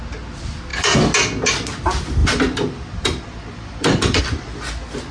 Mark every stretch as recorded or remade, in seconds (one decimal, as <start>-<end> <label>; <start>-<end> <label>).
0.0-2.2 recorded; 2.2-4.2 remade; 4.2-5.1 recorded